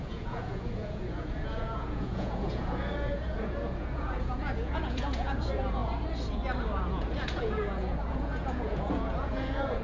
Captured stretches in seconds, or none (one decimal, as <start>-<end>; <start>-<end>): 5.8-6.8